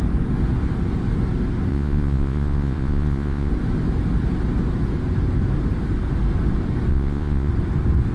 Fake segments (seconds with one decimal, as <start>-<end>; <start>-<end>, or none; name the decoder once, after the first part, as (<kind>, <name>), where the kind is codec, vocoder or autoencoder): 1.7-3.5 (vocoder, Vocos); 6.9-7.5